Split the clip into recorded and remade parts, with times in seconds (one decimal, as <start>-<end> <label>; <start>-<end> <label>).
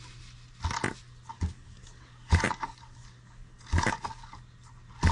0.0-1.3 recorded; 1.3-4.4 remade; 4.4-5.1 recorded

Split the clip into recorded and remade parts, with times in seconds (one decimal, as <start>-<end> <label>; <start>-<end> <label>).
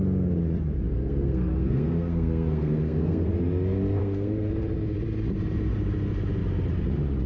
0.0-0.9 recorded; 0.9-3.3 remade; 3.3-4.0 recorded; 4.0-4.5 remade; 4.5-7.3 recorded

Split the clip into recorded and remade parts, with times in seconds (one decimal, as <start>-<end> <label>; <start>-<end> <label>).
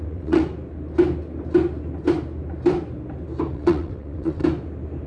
0.0-0.4 remade; 0.4-3.5 recorded; 3.5-4.4 remade; 4.4-5.1 recorded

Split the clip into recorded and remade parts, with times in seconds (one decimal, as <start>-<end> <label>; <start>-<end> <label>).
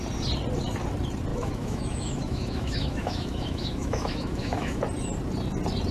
0.0-1.3 recorded; 1.3-4.8 remade; 4.8-5.9 recorded